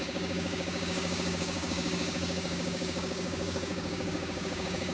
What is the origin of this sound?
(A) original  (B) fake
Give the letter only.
B